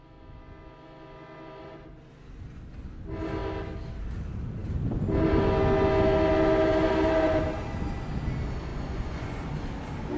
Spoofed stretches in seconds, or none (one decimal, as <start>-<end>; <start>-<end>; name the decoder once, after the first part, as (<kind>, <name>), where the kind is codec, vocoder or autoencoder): 8.7-9.5 (vocoder, Vocos)